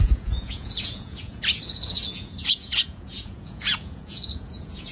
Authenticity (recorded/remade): remade